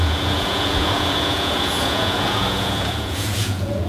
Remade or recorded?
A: remade